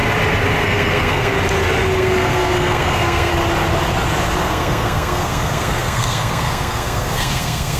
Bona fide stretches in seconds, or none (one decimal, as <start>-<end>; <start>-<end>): 0.0-0.6; 1.3-2.0; 3.3-4.4